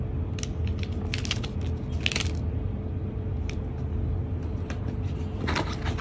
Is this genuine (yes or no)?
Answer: yes